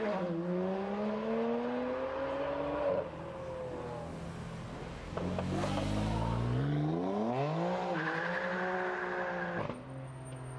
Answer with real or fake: real